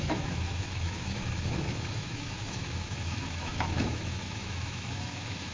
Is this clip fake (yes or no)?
yes